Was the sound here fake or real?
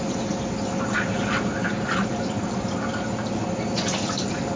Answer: real